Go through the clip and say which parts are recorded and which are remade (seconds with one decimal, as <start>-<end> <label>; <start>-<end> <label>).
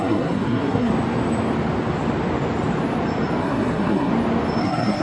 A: 0.0-0.9 remade; 0.9-3.4 recorded; 3.4-4.1 remade; 4.1-4.6 recorded; 4.6-5.0 remade